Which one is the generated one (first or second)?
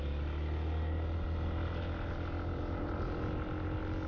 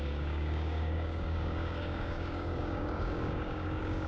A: second